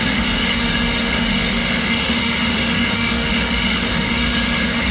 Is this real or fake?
fake